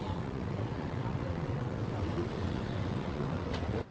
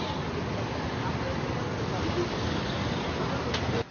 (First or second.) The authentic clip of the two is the second